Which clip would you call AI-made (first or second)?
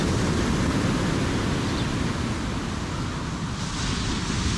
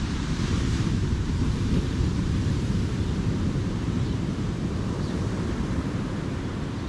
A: second